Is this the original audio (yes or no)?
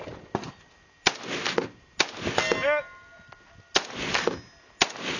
yes